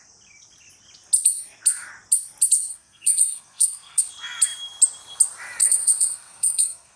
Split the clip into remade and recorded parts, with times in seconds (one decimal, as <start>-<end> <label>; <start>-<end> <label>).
0.0-2.7 recorded; 2.7-4.0 remade; 4.0-5.6 recorded; 5.6-7.0 remade